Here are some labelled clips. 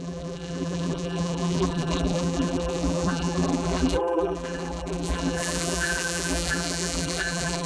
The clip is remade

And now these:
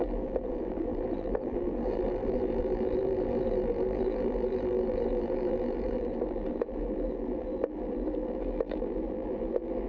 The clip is remade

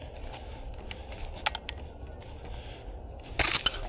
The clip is recorded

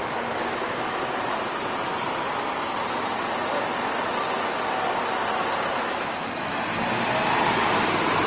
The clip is recorded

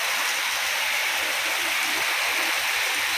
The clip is recorded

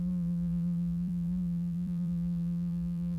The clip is remade